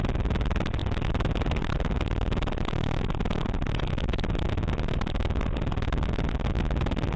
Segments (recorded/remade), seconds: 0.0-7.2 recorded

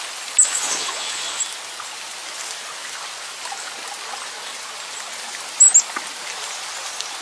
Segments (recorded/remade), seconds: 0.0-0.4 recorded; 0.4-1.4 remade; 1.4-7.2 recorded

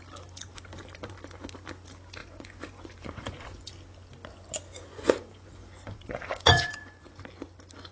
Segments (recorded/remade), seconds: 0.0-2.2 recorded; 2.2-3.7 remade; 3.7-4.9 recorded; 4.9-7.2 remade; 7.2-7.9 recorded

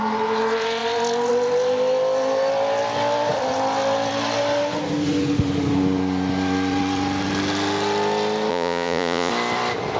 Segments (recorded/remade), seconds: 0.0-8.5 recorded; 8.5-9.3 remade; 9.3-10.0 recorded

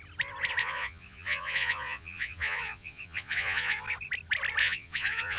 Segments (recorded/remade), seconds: 0.0-0.6 recorded; 0.6-3.8 remade; 3.8-4.6 recorded; 4.6-5.4 remade